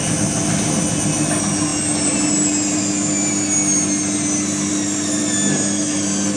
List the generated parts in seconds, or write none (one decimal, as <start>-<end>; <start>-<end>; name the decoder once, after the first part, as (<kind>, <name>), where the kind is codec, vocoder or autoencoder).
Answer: none